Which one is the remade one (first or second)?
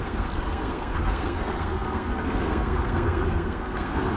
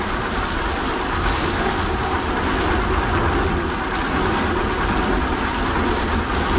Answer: first